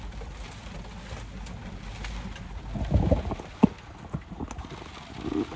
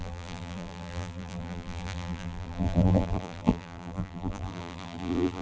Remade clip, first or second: second